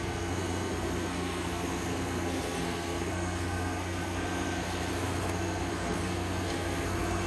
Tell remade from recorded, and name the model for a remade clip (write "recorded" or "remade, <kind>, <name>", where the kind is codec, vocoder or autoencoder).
remade, codec, SNAC